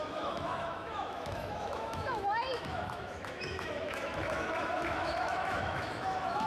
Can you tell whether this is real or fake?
fake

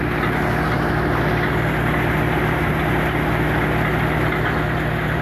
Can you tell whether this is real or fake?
real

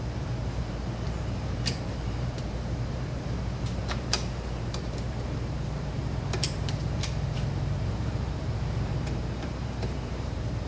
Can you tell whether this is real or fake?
fake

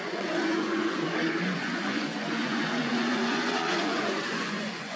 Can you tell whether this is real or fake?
fake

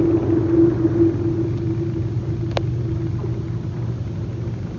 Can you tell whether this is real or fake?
real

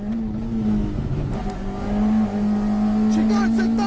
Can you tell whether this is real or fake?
real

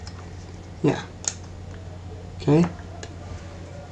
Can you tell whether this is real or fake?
real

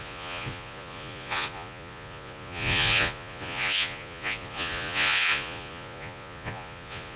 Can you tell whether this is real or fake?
fake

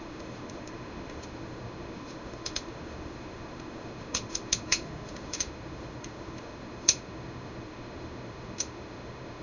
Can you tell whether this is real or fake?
fake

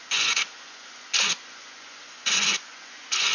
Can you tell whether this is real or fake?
fake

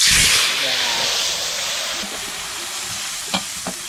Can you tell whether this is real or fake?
real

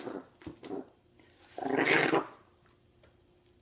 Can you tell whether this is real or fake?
real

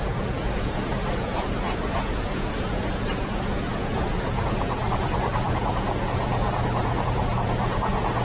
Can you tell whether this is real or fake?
fake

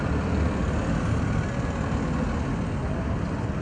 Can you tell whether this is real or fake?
real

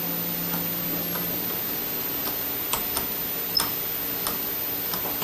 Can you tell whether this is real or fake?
real